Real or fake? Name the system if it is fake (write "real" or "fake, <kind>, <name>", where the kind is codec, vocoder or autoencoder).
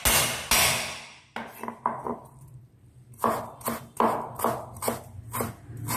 real